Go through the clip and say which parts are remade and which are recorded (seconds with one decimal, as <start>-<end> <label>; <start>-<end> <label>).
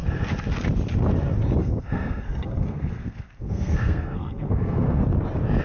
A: 0.0-1.6 recorded; 1.6-5.0 remade; 5.0-5.6 recorded